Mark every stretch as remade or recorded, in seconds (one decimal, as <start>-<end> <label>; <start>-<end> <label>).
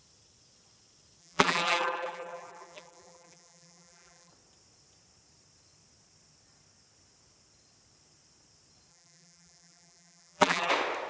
0.0-1.2 recorded; 1.2-4.3 remade; 4.3-8.9 recorded; 8.9-10.7 remade; 10.7-11.1 recorded